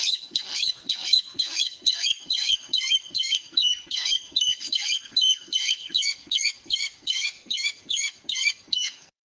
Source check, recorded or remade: remade